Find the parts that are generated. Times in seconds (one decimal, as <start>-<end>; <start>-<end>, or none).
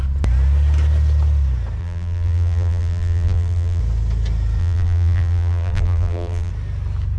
1.8-3.8; 4.6-6.5